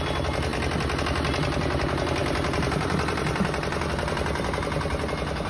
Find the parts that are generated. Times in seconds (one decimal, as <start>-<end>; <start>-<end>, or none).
none